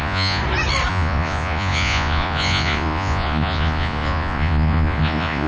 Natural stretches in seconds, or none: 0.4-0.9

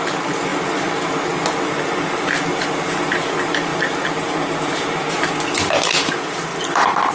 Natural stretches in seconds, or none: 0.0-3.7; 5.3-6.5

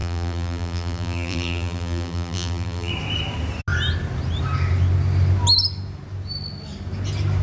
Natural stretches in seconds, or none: 2.9-7.4